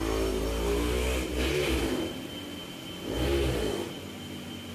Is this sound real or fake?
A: real